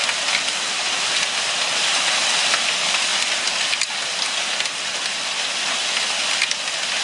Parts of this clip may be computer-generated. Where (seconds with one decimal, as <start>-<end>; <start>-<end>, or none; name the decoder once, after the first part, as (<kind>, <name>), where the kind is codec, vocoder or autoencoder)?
none